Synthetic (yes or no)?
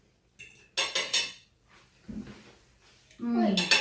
no